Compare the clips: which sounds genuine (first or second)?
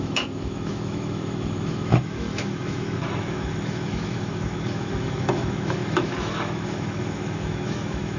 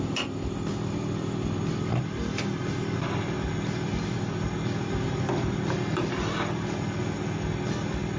second